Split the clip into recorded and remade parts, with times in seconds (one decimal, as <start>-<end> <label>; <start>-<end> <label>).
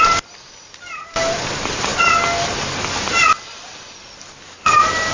0.0-1.9 remade; 1.9-5.1 recorded